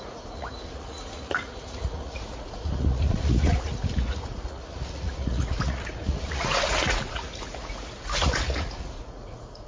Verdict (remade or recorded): remade